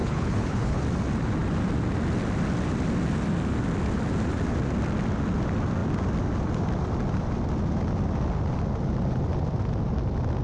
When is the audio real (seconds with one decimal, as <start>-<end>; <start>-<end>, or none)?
0.8-10.4